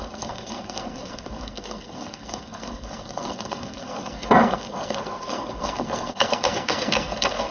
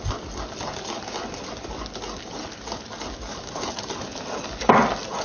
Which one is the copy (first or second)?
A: first